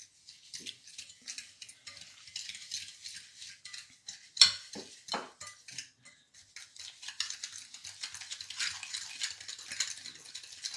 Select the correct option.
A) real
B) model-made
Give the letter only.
A